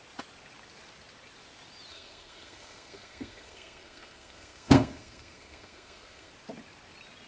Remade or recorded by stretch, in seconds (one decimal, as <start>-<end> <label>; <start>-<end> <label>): 0.0-1.9 recorded; 1.9-6.3 remade; 6.3-7.3 recorded